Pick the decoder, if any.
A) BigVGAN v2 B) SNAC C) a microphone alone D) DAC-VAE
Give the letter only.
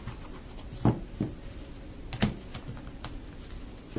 C